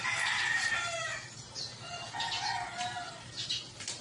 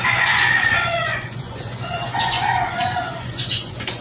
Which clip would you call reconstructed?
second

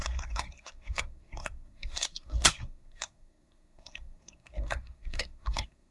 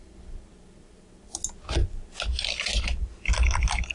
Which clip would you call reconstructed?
first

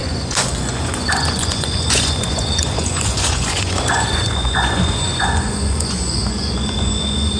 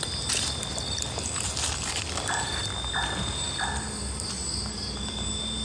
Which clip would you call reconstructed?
first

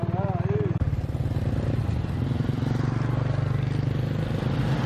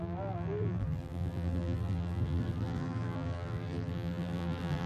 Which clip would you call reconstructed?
second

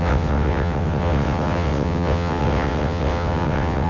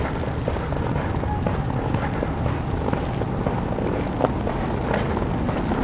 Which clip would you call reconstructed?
first